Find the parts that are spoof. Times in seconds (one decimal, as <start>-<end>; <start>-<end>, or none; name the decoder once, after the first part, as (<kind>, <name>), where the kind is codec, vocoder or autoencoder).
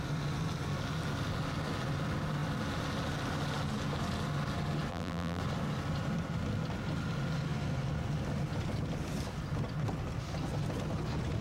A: 4.9-5.4 (vocoder, BigVGAN v2)